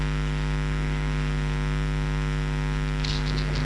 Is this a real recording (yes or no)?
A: yes